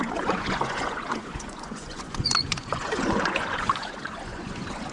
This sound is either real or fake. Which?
fake